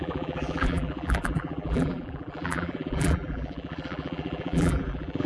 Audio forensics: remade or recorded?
remade